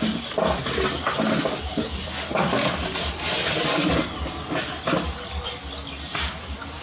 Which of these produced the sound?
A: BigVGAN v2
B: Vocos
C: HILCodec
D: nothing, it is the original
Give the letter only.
D